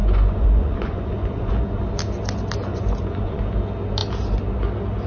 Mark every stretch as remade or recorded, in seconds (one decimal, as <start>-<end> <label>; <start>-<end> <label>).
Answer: 0.0-1.5 remade; 1.5-2.7 recorded; 2.7-3.4 remade; 3.4-5.1 recorded